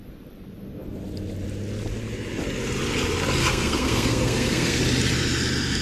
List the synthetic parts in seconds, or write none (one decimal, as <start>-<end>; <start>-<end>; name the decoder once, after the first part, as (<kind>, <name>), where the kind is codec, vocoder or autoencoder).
3.4-4.8 (codec, SNAC)